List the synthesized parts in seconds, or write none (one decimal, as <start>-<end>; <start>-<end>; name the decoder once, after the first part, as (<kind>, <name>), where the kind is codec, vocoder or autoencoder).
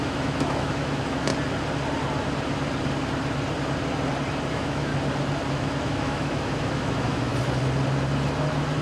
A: 0.0-1.3 (autoencoder, DAC-VAE); 4.5-4.9; 5.5-7.3